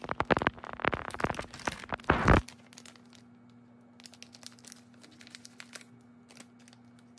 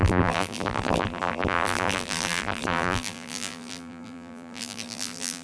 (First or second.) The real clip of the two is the first